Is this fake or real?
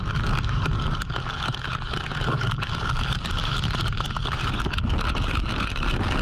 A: fake